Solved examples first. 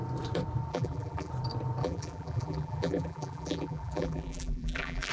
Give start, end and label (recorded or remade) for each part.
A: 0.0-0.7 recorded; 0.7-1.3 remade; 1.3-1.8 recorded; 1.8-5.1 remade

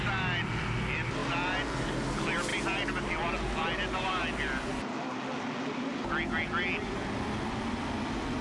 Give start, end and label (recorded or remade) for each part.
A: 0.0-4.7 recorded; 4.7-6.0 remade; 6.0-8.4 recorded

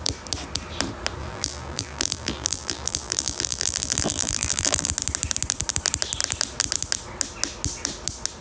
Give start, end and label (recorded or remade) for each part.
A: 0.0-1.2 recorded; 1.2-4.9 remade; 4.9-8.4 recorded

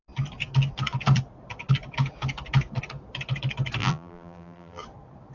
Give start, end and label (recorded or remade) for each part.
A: 0.0-3.8 recorded; 3.8-4.8 remade; 4.8-5.3 recorded